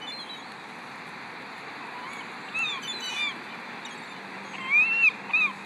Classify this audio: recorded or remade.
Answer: recorded